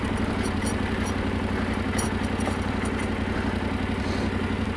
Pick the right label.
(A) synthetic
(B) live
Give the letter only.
B